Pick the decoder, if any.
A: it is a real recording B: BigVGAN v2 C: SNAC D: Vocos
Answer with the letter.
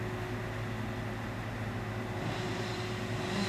A